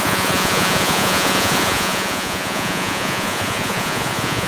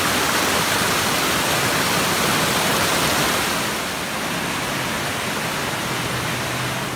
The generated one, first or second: first